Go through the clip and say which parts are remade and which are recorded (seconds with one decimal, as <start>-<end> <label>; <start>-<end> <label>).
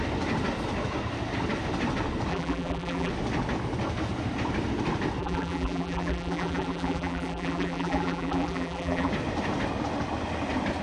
0.0-2.3 recorded; 2.3-3.1 remade; 3.1-5.2 recorded; 5.2-9.1 remade; 9.1-10.8 recorded